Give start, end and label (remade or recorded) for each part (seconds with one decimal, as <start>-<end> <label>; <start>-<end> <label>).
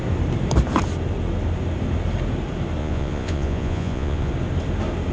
0.0-2.8 recorded; 2.8-4.3 remade; 4.3-5.1 recorded